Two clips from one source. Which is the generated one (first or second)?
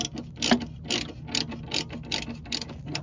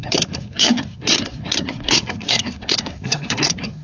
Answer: second